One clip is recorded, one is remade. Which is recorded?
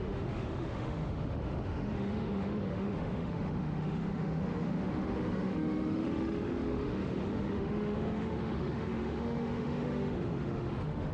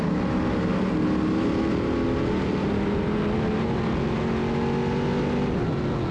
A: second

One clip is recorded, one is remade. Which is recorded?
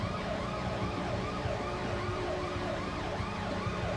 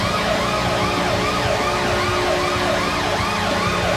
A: second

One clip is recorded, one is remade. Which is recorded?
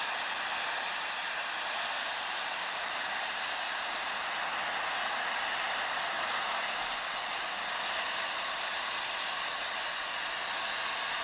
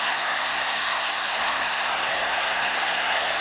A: first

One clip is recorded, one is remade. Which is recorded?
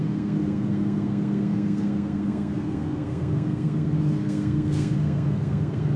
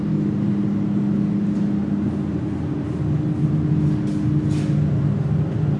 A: second